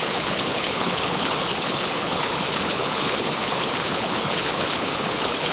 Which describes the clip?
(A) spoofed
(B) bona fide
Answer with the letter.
A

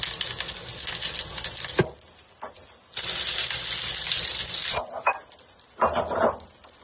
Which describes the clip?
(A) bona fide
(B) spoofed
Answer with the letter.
A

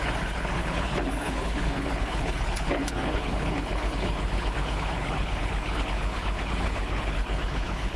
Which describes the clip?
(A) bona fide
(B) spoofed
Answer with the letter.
B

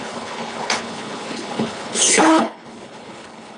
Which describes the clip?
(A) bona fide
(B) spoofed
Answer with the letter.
B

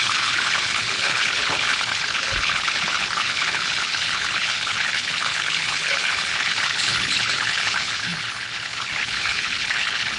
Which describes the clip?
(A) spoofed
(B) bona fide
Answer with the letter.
A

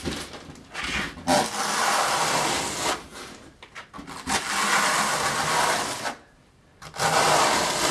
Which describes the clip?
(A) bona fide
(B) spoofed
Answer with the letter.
A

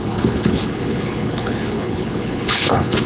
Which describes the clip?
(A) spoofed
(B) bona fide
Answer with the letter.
A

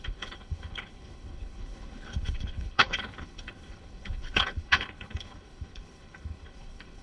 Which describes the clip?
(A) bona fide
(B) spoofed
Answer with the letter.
B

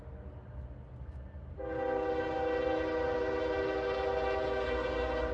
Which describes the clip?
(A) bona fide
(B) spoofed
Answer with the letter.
A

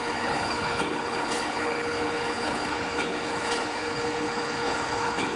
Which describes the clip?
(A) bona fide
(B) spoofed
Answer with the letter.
B